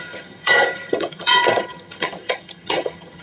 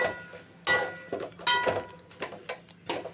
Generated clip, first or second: first